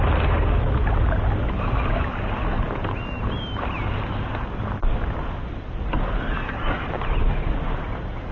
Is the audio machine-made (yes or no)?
no